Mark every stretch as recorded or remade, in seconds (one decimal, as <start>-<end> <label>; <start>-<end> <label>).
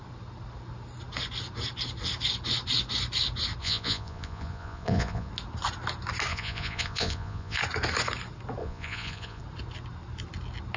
0.0-3.6 recorded; 3.6-5.3 remade; 5.3-6.3 recorded; 6.3-7.6 remade; 7.6-8.6 recorded; 8.6-9.4 remade; 9.4-10.8 recorded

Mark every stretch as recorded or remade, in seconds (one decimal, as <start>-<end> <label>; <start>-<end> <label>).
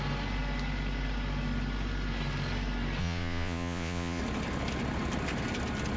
0.0-3.0 recorded; 3.0-4.2 remade; 4.2-6.0 recorded